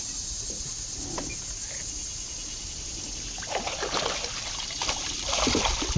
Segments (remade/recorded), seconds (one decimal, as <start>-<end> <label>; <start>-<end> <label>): 0.0-2.5 recorded; 2.5-5.6 remade; 5.6-6.0 recorded